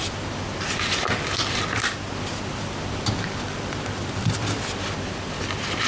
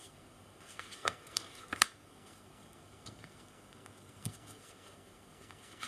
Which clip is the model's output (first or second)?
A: second